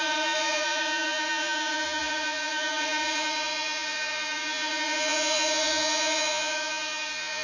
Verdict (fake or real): fake